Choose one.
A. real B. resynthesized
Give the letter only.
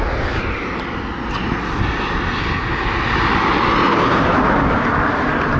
A